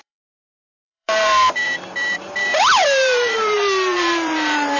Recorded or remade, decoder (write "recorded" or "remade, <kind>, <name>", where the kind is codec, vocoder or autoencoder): remade, vocoder, BigVGAN v2